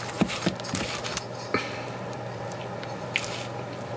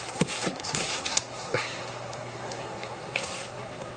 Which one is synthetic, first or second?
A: second